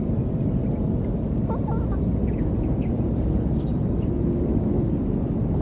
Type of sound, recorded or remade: recorded